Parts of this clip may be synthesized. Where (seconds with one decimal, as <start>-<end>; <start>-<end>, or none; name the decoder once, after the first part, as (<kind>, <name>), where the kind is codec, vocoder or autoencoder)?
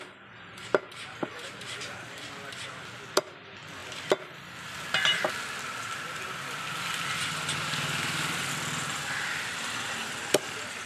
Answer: 0.6-2.3 (vocoder, BigVGAN v2)